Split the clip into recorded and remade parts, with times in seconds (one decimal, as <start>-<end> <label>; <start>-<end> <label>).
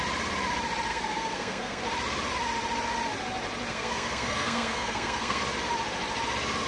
0.0-0.9 recorded; 0.9-1.8 remade; 1.8-3.7 recorded; 3.7-5.4 remade; 5.4-6.7 recorded